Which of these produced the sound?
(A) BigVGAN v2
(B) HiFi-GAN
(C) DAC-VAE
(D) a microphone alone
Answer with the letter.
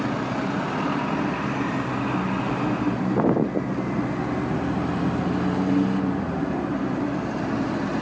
D